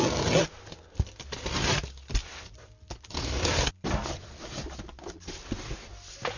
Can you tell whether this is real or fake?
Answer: real